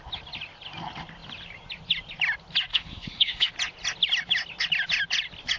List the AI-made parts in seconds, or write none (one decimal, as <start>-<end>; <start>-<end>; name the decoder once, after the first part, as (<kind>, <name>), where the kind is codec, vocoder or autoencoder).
2.7-3.5 (autoencoder, DAC-VAE)